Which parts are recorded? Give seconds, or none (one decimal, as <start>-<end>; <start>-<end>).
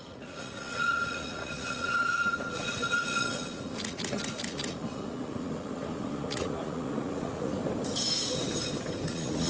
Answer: 7.6-9.1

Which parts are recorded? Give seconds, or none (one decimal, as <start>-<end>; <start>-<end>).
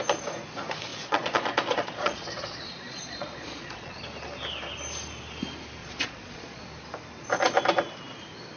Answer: 0.0-0.9; 4.0-5.8; 6.6-8.6